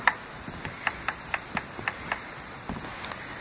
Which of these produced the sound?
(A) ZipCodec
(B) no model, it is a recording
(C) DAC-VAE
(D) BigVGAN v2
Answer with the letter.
B